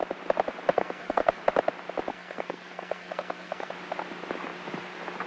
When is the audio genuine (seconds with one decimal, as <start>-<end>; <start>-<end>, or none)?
0.0-0.7; 1.4-2.1; 3.7-5.3